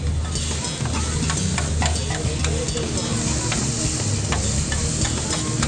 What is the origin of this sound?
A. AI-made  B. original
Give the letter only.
B